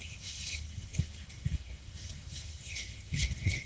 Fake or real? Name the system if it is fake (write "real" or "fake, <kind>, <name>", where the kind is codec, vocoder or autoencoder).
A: fake, codec, SNAC